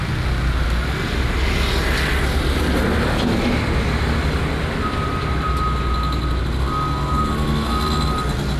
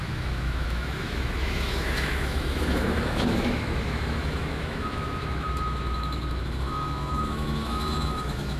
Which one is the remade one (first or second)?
second